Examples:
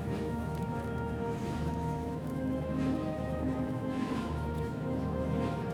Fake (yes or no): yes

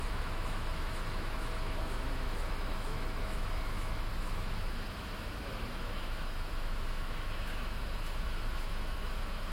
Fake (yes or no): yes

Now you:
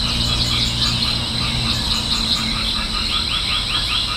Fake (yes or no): no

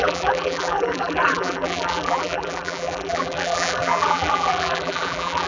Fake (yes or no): yes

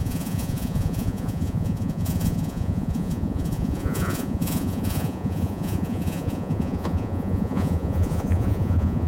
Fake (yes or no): yes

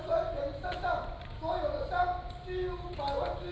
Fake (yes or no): no